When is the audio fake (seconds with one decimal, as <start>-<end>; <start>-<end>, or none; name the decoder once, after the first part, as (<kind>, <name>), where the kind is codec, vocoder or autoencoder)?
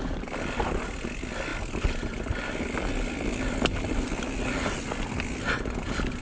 none